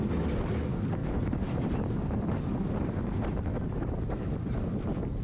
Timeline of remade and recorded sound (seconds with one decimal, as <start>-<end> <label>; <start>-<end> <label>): 0.0-1.0 recorded; 1.0-4.1 remade; 4.1-5.2 recorded